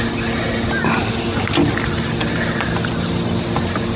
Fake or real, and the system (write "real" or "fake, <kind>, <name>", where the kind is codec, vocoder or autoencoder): real